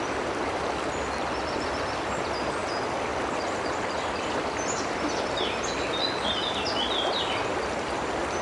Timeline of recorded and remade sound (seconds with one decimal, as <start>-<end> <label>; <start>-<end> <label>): 0.0-8.4 recorded